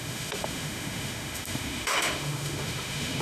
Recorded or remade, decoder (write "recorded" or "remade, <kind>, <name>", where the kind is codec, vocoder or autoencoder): remade, autoencoder, DAC-VAE